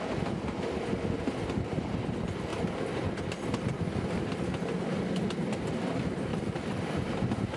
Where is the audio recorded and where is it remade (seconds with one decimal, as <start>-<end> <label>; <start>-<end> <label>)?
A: 0.0-6.3 recorded; 6.3-7.0 remade; 7.0-7.6 recorded